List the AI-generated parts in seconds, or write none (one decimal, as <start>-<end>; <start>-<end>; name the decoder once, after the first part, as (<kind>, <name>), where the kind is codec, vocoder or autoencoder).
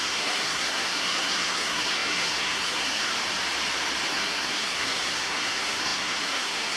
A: 0.0-3.1 (codec, SNAC); 4.1-6.8